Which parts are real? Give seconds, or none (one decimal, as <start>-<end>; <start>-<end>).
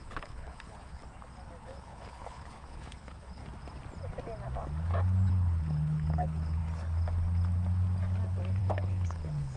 1.0-1.6; 3.4-5.3; 6.6-8.6